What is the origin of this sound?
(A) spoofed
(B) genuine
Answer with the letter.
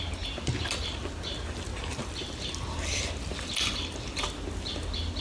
B